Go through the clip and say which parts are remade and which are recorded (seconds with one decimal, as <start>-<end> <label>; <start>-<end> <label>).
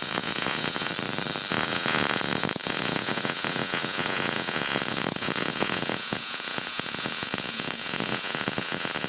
0.0-0.9 remade; 0.9-1.5 recorded; 1.5-9.1 remade